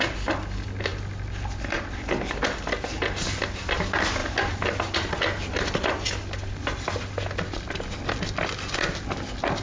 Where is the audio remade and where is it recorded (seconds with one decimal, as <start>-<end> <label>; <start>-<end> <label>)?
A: 0.0-9.6 recorded